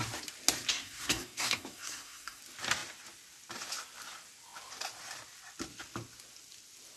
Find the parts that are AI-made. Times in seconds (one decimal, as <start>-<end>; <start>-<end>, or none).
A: 0.7-2.4